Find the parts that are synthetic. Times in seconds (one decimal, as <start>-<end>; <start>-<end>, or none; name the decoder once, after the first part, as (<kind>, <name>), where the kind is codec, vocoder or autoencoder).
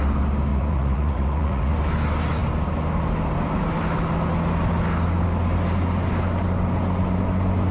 0.5-1.7 (vocoder, Vocos)